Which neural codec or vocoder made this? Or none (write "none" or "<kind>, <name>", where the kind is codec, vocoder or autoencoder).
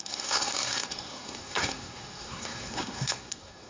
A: codec, SNAC